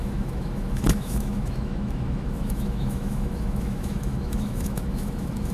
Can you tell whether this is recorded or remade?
remade